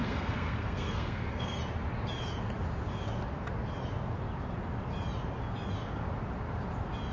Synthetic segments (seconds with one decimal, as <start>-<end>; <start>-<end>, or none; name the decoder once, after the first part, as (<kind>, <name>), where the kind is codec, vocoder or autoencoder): 0.0-1.6 (codec, SNAC)